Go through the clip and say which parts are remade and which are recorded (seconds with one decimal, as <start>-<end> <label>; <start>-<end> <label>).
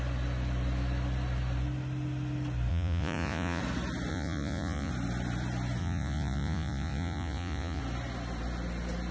0.0-2.7 recorded; 2.7-3.6 remade; 3.6-4.1 recorded; 4.1-4.9 remade; 4.9-5.8 recorded; 5.8-7.8 remade; 7.8-9.1 recorded